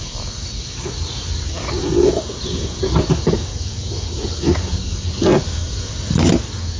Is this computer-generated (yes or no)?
no